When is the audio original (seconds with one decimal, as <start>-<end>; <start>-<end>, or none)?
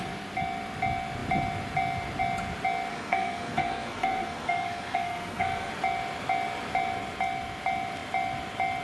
0.0-2.9; 5.7-8.8